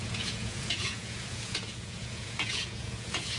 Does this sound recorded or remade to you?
remade